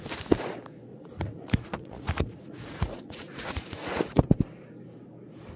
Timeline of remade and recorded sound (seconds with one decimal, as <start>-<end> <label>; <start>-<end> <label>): 0.0-0.9 recorded; 0.9-4.3 remade; 4.3-5.6 recorded